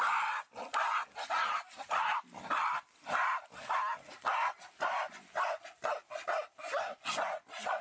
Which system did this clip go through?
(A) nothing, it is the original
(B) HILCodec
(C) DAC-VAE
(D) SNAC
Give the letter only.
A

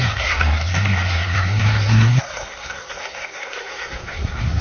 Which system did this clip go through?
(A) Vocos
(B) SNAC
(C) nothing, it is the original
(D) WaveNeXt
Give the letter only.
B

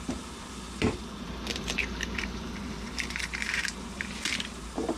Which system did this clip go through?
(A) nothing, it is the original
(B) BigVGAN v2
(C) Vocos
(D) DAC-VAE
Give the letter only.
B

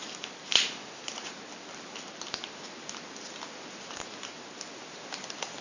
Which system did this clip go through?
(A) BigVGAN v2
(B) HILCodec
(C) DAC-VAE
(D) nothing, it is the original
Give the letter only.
D